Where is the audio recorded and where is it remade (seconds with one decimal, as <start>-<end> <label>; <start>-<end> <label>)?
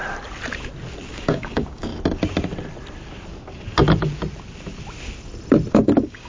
0.0-1.1 recorded; 1.1-1.9 remade; 1.9-5.7 recorded; 5.7-6.3 remade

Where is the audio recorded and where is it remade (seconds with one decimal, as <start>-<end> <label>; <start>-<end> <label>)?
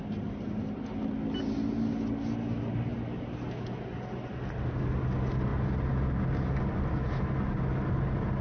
0.0-8.4 recorded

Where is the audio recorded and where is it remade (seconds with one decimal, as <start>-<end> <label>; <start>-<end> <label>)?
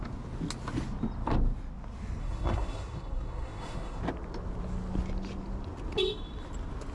0.0-2.2 recorded; 2.2-4.0 remade; 4.0-6.9 recorded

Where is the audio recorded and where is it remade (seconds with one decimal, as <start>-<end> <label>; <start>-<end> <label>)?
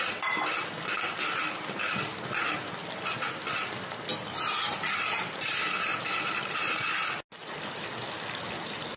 0.0-9.0 recorded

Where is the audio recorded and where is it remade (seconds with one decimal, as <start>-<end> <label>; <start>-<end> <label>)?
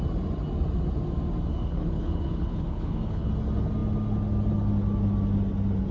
0.0-1.5 recorded; 1.5-3.3 remade; 3.3-5.9 recorded